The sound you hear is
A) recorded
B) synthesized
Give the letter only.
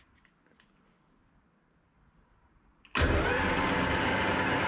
A